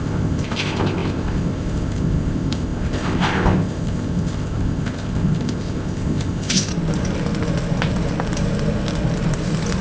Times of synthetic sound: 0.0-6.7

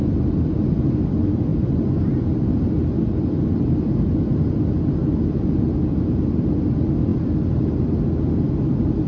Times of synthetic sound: none